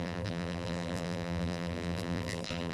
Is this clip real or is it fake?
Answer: fake